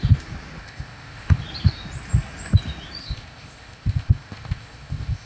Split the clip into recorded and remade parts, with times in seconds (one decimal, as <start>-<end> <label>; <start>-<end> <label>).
0.0-0.6 recorded; 0.6-1.4 remade; 1.4-3.0 recorded; 3.0-5.3 remade